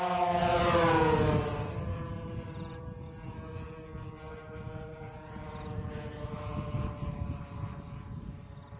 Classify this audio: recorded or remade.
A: recorded